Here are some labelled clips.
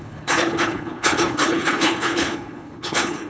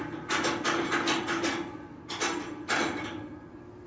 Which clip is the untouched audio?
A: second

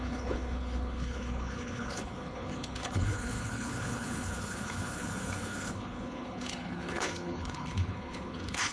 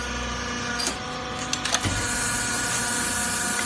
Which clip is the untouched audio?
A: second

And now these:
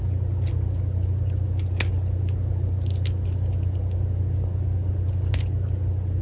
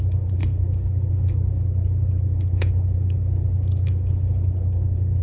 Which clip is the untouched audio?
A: first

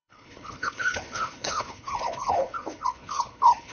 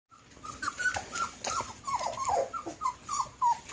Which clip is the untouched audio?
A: second